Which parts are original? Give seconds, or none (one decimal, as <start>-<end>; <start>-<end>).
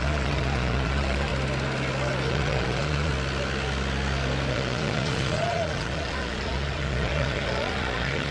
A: 1.3-2.3; 3.1-4.5